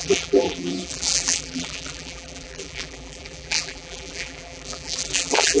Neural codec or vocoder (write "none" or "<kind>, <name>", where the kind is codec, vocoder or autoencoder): vocoder, BigVGAN v2